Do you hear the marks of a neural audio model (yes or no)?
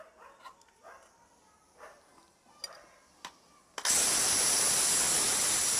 no